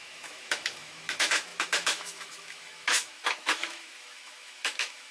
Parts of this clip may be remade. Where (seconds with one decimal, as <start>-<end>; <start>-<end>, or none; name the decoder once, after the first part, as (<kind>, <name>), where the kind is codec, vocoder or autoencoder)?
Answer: 0.0-5.1 (autoencoder, DAC-VAE)